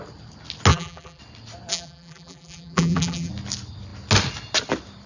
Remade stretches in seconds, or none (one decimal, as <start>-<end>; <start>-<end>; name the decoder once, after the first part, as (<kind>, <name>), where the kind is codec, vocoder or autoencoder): 0.7-1.2 (vocoder, BigVGAN v2); 1.7-3.3